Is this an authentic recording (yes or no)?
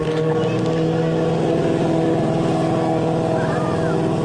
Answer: yes